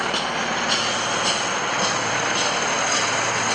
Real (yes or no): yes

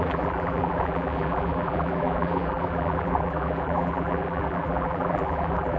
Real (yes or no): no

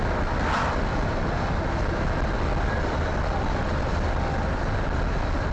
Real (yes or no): yes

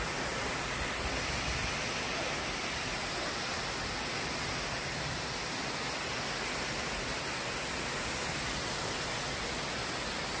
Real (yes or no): yes